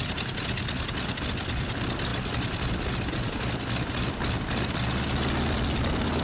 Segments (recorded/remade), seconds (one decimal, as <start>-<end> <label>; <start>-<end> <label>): 0.0-6.2 recorded